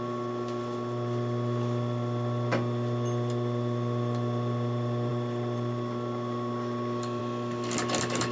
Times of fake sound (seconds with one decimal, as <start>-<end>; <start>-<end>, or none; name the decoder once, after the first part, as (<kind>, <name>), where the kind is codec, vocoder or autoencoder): none